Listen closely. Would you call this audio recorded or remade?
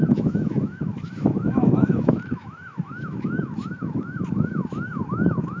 remade